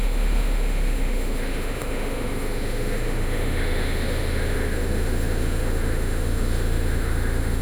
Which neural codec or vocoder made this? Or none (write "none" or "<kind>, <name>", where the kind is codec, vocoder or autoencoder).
autoencoder, DAC-VAE